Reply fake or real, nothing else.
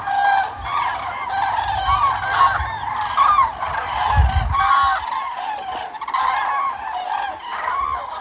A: real